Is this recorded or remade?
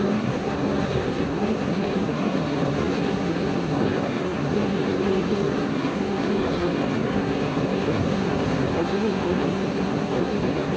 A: remade